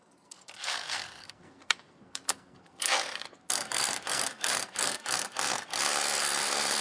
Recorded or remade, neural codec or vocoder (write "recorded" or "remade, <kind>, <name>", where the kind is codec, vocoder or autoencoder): remade, codec, SNAC